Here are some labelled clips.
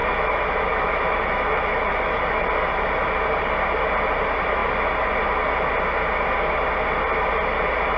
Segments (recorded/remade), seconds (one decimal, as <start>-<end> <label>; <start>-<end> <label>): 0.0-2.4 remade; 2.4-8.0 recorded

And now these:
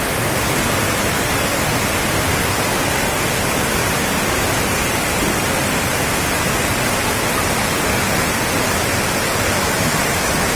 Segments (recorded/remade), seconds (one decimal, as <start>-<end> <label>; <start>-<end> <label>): 0.0-10.6 recorded

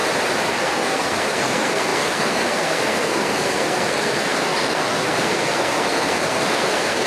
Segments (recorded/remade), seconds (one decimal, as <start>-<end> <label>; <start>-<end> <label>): 0.0-0.5 recorded; 0.5-7.1 remade

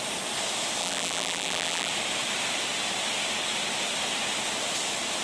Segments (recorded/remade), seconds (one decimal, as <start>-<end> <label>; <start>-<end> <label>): 0.0-0.8 recorded; 0.8-1.9 remade; 1.9-5.2 recorded

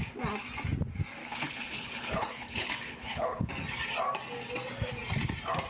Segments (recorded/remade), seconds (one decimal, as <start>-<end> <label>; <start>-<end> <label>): 0.0-1.2 recorded; 1.2-3.5 remade; 3.5-5.7 recorded

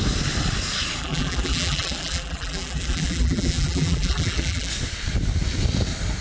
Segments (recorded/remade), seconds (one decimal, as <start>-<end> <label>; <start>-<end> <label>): 0.0-1.0 recorded; 1.0-4.7 remade; 4.7-6.2 recorded

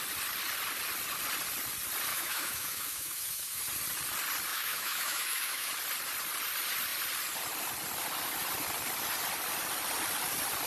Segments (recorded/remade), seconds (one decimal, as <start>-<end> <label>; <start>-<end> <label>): 0.0-2.1 recorded; 2.1-3.6 remade; 3.6-4.5 recorded; 4.5-5.7 remade; 5.7-10.7 recorded